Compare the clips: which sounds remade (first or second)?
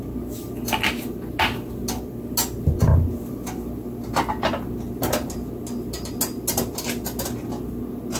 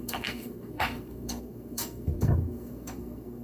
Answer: second